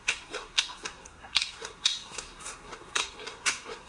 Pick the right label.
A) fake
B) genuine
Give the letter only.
A